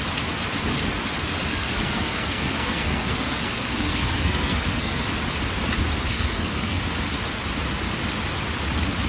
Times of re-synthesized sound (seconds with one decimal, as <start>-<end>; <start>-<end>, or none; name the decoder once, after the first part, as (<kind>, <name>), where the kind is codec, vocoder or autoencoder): 1.5-5.0 (codec, SNAC); 6.1-6.8